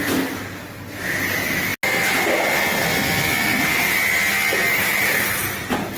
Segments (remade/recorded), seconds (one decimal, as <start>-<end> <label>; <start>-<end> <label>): 0.0-6.0 recorded